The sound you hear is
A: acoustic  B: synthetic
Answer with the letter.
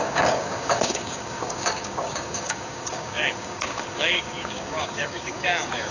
B